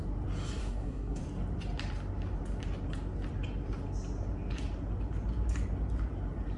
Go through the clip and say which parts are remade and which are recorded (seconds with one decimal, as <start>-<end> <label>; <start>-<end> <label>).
0.0-0.6 recorded; 0.6-1.2 remade; 1.2-6.6 recorded